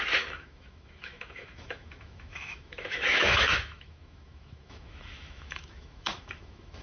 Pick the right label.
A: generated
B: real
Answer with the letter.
A